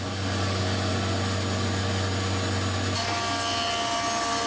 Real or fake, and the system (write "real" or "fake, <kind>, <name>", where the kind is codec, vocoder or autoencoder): real